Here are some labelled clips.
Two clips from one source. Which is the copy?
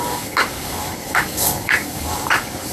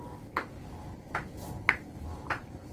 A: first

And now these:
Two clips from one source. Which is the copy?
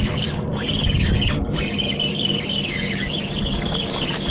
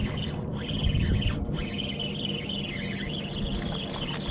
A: first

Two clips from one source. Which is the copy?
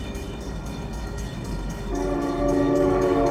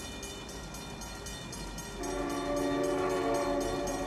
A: first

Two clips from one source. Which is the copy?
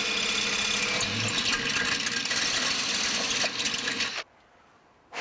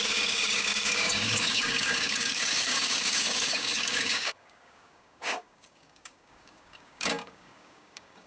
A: second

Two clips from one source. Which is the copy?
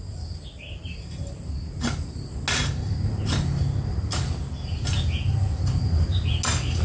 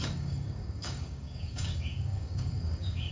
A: second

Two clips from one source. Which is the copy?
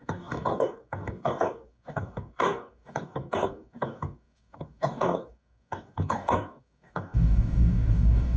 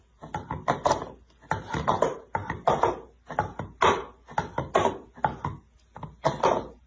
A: first